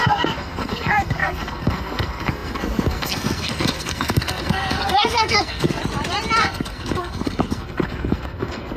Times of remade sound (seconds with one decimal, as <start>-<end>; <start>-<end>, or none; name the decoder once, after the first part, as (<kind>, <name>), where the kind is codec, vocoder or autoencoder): 0.0-5.8 (codec, SNAC); 6.4-8.8